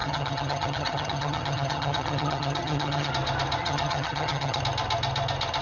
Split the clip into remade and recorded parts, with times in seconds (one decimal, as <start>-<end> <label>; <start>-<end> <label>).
0.0-3.1 remade; 3.1-3.6 recorded; 3.6-4.6 remade; 4.6-5.6 recorded